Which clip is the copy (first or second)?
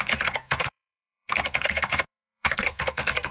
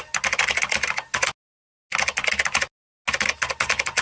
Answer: first